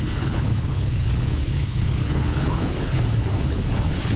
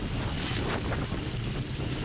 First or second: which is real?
second